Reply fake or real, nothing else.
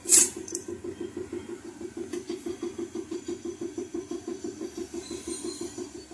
fake